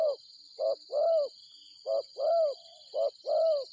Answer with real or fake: real